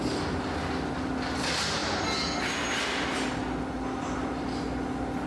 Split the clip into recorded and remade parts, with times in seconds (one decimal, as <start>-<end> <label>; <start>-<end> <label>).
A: 0.0-5.3 recorded